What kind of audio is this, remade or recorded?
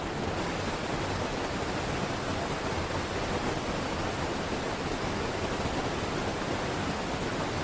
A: recorded